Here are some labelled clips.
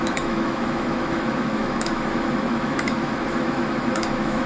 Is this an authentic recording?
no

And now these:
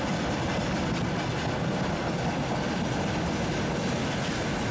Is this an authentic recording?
yes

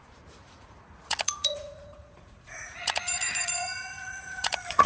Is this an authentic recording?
no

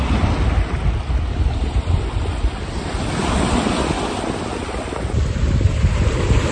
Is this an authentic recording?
yes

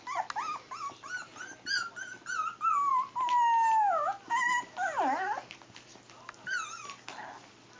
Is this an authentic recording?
yes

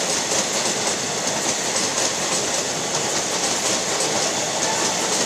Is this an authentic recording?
yes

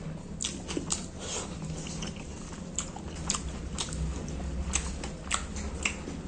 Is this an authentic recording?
yes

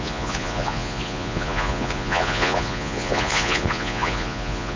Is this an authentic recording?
no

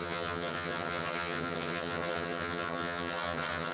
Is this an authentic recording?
no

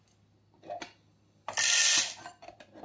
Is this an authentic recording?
yes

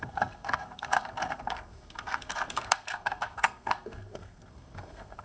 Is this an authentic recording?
no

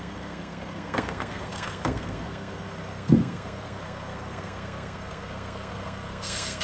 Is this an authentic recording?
no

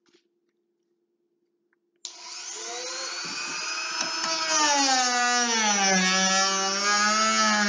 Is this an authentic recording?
yes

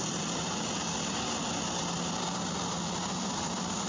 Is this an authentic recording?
no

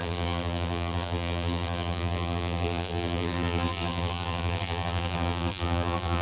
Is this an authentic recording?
no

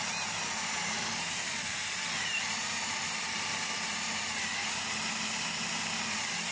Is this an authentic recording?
yes